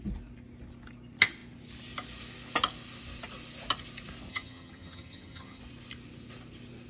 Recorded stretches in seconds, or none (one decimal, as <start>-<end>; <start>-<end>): 0.0-4.3; 5.6-6.9